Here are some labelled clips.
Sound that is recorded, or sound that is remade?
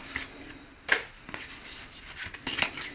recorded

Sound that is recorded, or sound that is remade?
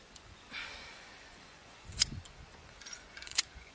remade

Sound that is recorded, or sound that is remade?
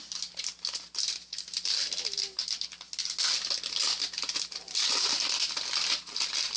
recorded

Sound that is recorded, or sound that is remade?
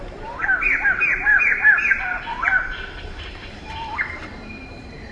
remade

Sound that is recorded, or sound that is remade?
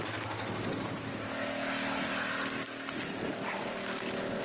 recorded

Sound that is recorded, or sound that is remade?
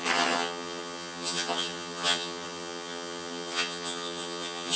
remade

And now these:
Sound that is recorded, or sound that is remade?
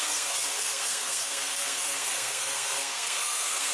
remade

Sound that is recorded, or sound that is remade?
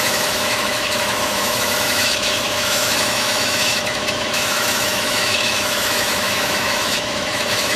remade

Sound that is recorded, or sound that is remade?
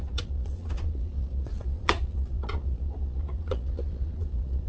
remade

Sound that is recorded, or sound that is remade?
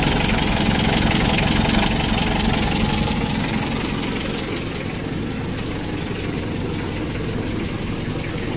recorded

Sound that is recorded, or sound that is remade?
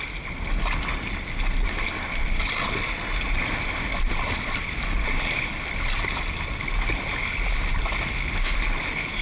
recorded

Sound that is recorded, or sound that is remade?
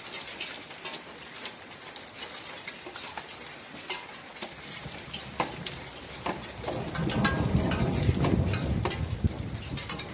recorded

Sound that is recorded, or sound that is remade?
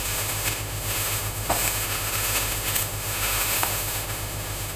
remade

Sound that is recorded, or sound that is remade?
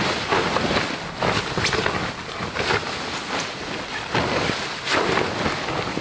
recorded